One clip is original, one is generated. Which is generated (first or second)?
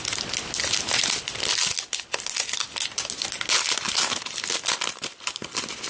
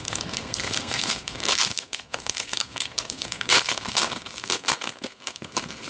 second